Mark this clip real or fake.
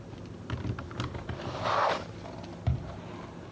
real